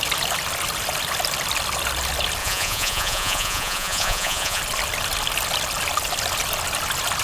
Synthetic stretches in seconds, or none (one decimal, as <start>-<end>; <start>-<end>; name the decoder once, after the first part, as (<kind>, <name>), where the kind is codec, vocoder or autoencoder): 2.4-4.6 (vocoder, Vocos)

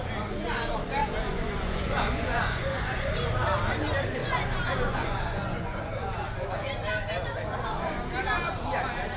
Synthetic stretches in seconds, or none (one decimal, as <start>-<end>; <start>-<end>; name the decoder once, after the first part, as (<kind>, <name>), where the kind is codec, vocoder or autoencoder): 1.0-3.1 (vocoder, Vocos); 4.2-6.5; 7.5-8.0

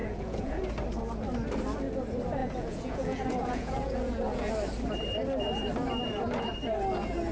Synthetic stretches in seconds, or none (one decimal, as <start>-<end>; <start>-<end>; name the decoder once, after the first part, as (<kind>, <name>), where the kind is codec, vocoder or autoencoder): 0.0-0.6 (vocoder, Vocos); 2.4-4.5

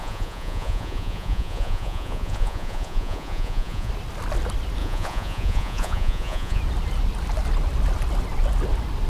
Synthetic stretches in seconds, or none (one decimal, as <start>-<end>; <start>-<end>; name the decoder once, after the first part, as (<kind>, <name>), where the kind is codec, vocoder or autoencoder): 0.0-3.9 (vocoder, Vocos); 4.8-6.6

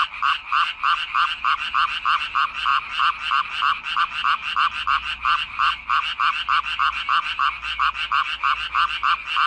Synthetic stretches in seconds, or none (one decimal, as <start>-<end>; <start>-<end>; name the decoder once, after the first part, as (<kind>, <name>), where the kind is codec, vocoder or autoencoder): none

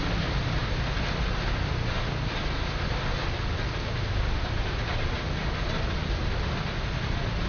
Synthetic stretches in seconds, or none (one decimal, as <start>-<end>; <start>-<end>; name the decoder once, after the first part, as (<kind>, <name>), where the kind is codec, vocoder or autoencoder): none

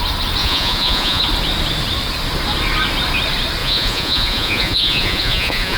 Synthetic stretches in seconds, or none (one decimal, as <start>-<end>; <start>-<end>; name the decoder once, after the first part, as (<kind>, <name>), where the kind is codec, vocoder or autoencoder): 0.4-1.2 (vocoder, Vocos); 3.6-5.8